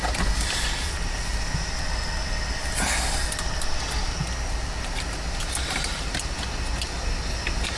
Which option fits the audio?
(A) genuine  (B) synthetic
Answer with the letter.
A